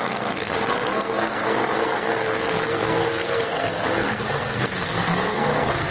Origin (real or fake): fake